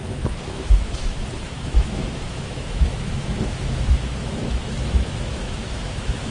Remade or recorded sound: remade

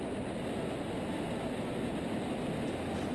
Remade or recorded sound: recorded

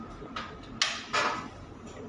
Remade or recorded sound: recorded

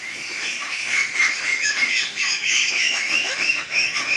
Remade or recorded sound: remade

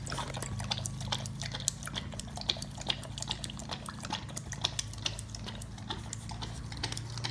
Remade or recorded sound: recorded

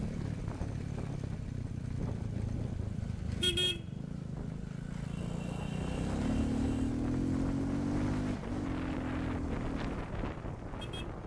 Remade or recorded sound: recorded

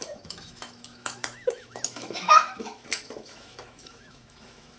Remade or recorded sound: remade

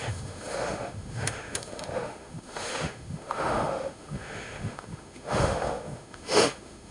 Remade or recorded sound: remade